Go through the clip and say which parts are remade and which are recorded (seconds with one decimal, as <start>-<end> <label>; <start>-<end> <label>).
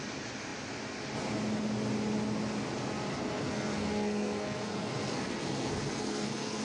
0.0-3.1 recorded; 3.1-6.6 remade